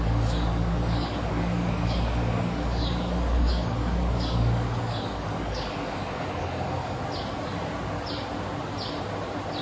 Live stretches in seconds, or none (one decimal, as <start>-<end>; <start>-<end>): 7.0-9.6